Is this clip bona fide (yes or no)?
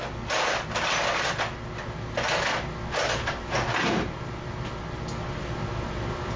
yes